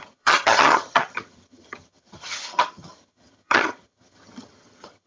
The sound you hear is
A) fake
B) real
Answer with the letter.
A